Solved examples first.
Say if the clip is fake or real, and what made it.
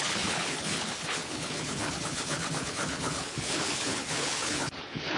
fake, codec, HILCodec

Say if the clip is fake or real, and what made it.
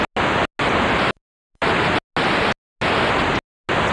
real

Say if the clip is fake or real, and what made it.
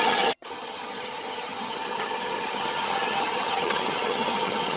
fake, vocoder, HiFi-GAN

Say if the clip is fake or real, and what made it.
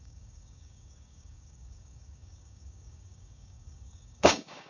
fake, codec, DAC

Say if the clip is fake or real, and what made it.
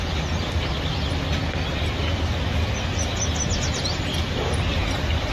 real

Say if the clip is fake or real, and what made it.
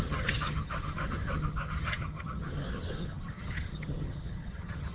fake, vocoder, HiFi-GAN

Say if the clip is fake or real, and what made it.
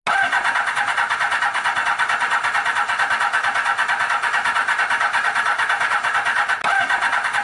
real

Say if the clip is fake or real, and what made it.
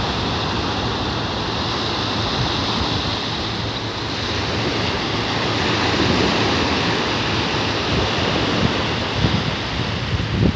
real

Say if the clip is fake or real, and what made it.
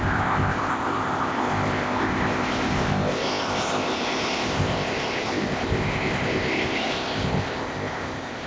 fake, codec, ZipCodec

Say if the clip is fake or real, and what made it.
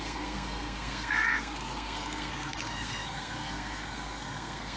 fake, codec, SNAC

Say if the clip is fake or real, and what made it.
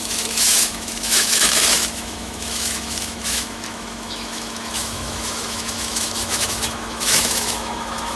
fake, autoencoder, DAC-VAE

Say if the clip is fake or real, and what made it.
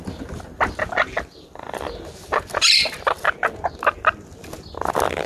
real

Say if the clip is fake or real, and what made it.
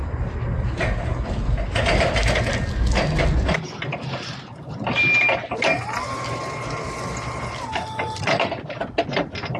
real